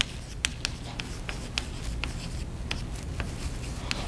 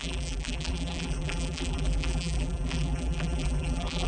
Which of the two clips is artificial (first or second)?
second